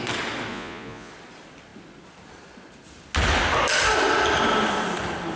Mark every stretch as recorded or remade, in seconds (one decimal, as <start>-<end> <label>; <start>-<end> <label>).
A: 0.0-0.5 recorded; 0.5-1.1 remade; 1.1-5.4 recorded